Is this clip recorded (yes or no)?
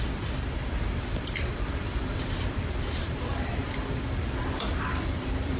no